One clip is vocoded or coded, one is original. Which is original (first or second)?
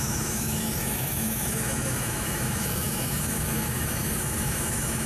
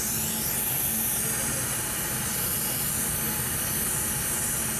second